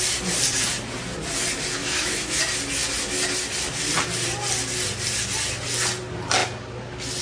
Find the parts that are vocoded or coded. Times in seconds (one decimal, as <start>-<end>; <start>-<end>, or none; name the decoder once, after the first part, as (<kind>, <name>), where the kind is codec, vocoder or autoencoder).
1.8-2.4 (autoencoder, DAC-VAE)